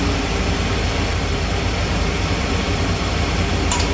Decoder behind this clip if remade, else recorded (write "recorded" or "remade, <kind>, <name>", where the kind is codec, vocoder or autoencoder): remade, vocoder, BigVGAN v2